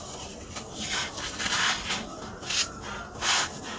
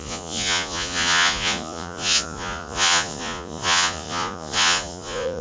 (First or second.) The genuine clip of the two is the first